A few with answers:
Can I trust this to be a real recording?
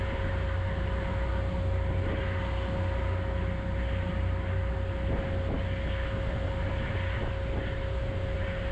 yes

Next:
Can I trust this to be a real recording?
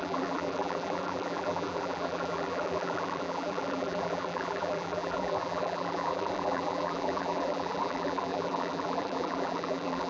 no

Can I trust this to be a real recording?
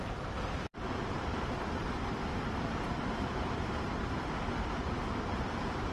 no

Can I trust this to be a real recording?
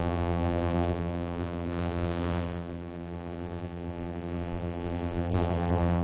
no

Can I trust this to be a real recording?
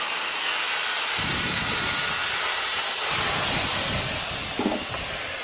no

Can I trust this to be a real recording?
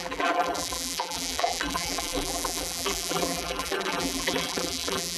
no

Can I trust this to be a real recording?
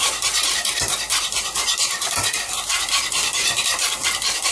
no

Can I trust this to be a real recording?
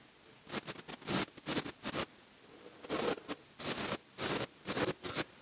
yes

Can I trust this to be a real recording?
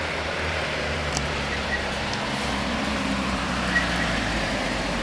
no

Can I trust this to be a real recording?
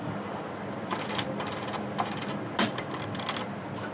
yes